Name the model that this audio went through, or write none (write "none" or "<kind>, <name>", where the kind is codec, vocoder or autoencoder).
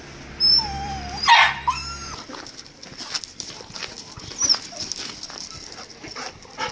none